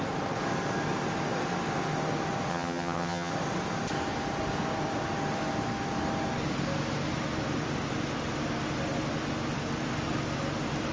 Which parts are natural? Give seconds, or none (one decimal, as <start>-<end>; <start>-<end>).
0.0-2.5; 3.3-10.9